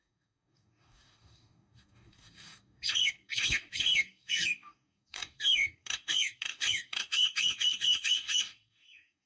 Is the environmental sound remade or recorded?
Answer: remade